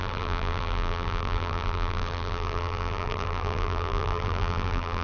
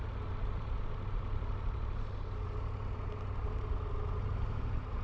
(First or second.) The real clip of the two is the second